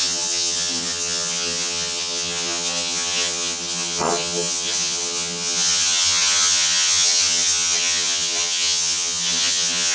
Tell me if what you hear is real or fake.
fake